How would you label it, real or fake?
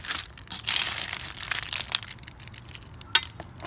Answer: real